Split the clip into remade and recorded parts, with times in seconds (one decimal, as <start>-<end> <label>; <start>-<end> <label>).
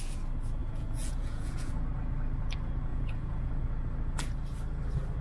0.0-0.6 recorded; 0.6-1.7 remade; 1.7-2.9 recorded; 2.9-3.5 remade; 3.5-5.2 recorded